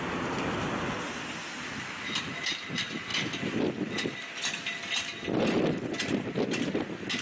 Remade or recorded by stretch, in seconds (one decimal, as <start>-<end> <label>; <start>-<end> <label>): 0.0-7.2 recorded